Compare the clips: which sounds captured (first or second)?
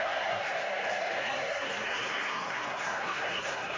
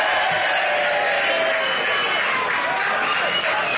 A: second